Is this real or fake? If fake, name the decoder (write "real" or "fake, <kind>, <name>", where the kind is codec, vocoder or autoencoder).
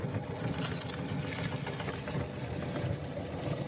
real